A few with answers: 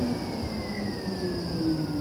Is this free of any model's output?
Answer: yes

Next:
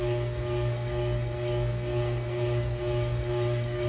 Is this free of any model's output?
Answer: no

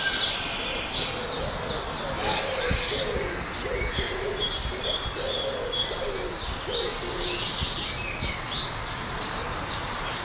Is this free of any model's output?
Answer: yes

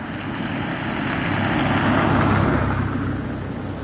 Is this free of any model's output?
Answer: yes